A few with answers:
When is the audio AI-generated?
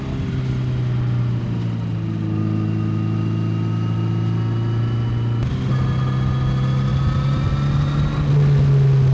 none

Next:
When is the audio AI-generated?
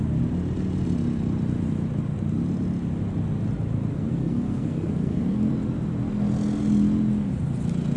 3.9-5.5 (codec, SNAC)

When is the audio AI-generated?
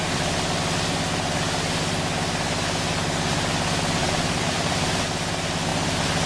0.0-0.5 (vocoder, BigVGAN v2); 4.0-5.0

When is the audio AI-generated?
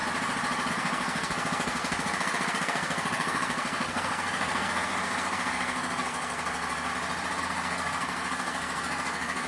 0.7-6.9 (codec, SNAC); 7.4-9.5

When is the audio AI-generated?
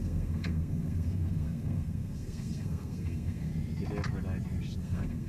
0.0-3.5 (codec, SNAC); 4.8-5.3